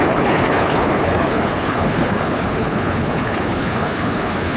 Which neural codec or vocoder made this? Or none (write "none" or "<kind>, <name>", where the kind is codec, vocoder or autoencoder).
codec, HILCodec